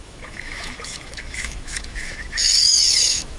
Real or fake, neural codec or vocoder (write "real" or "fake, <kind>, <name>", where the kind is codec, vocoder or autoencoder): fake, autoencoder, DAC-VAE